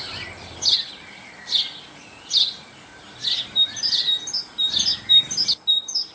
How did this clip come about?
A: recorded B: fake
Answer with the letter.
A